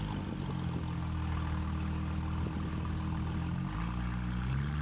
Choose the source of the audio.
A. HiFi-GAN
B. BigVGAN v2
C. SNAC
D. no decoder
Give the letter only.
D